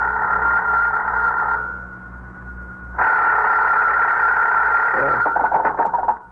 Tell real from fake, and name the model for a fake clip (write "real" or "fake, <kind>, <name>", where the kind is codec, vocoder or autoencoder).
real